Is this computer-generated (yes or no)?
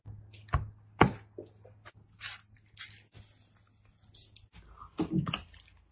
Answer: no